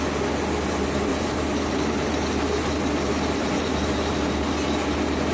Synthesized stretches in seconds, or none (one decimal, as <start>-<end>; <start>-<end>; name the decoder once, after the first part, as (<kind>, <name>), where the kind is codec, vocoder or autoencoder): 1.1-4.3 (vocoder, BigVGAN v2)